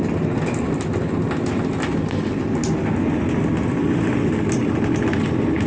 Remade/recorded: recorded